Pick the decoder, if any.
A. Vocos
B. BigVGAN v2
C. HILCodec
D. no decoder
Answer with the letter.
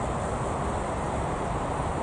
D